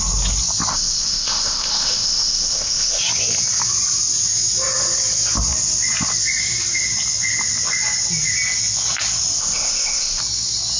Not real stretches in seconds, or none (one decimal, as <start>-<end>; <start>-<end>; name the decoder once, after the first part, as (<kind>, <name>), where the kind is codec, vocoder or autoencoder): 0.7-3.0 (codec, ZipCodec); 9.4-10.2